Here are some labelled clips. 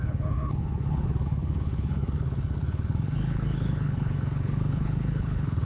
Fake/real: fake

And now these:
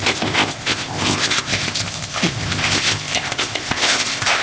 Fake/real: fake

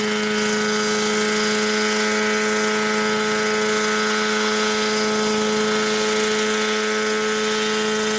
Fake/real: real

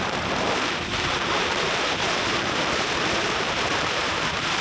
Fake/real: fake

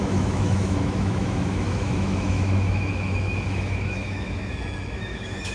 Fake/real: fake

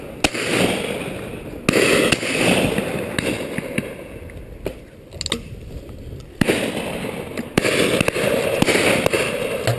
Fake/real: real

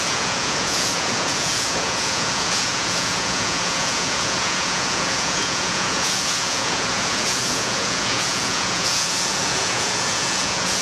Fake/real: fake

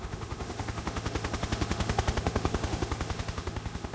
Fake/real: fake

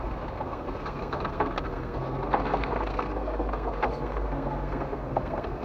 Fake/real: fake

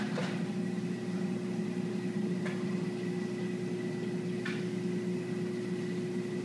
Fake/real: real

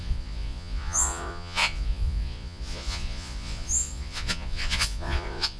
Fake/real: fake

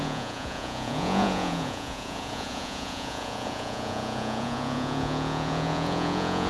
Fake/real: fake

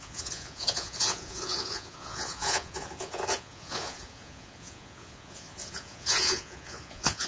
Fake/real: fake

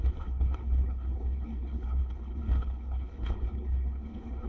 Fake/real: fake